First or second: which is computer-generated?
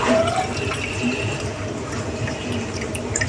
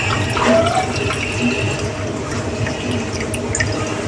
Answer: first